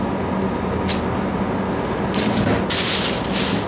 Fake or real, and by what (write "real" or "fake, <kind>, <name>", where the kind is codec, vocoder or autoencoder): real